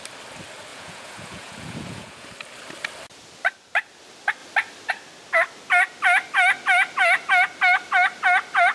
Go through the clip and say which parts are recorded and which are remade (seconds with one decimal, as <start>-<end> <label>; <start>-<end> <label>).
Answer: 0.0-0.7 recorded; 0.7-2.3 remade; 2.3-8.7 recorded